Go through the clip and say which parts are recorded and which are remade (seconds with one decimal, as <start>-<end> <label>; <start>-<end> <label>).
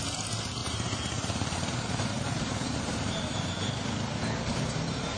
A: 0.0-0.6 recorded; 0.6-3.7 remade; 3.7-5.2 recorded